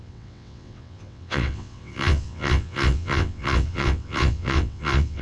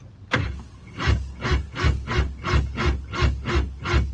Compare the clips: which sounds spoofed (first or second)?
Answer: first